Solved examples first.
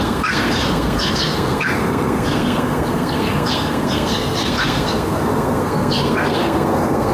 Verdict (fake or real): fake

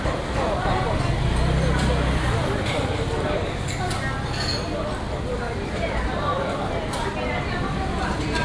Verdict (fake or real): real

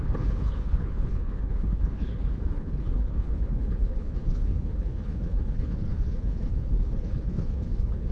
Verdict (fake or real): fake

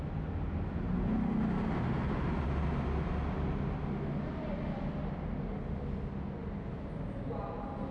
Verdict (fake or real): real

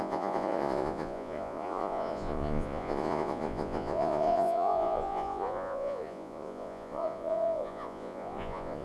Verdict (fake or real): fake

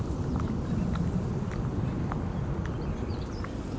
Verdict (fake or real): real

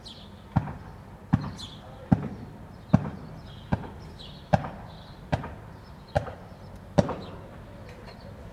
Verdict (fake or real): real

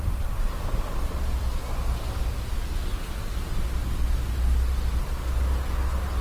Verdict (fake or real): real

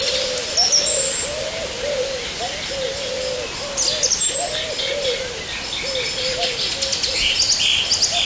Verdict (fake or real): real